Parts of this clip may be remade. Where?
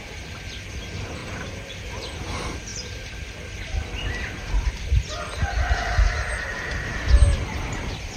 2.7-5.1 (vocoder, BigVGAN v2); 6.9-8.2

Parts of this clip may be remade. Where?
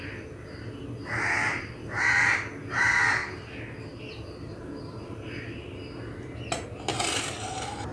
none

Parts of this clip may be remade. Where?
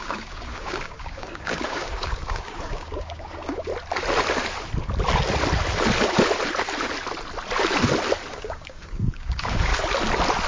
0.0-3.7 (codec, DAC); 8.3-9.7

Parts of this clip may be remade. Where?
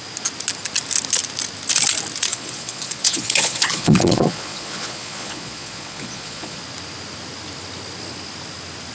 2.3-6.6 (vocoder, Vocos)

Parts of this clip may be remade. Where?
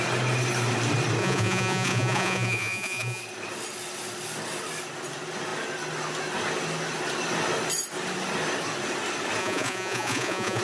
1.2-3.2 (vocoder, Vocos); 9.4-10.6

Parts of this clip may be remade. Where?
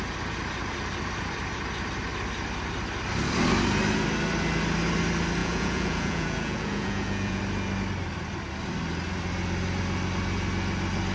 5.4-7.4 (vocoder, Vocos)